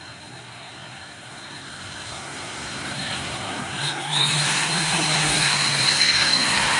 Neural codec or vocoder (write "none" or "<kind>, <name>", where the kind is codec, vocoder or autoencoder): codec, SNAC